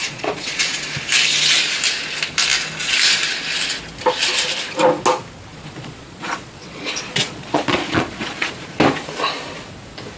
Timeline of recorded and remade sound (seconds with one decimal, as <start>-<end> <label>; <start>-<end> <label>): 0.0-0.8 remade; 0.8-5.5 recorded; 5.5-8.5 remade; 8.5-10.2 recorded